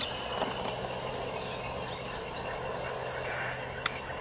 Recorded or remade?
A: recorded